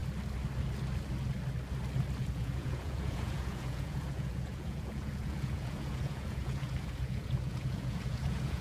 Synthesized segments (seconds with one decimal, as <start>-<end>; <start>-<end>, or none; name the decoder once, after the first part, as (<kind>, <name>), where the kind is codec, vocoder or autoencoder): 2.2-8.6 (vocoder, Vocos)